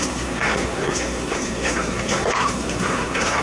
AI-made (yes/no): yes